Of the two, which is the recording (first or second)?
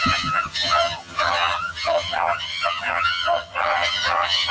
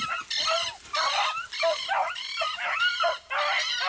second